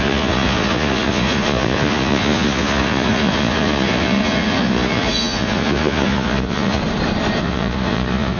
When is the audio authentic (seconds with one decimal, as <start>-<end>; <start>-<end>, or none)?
6.8-7.4